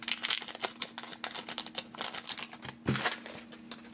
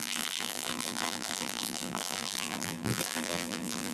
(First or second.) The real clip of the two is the first